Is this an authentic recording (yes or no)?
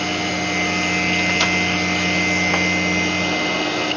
yes